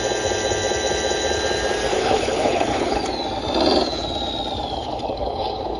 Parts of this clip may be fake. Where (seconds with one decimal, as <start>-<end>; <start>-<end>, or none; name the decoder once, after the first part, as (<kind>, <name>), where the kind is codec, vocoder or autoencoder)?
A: 1.9-3.0 (codec, HILCodec); 4.8-5.8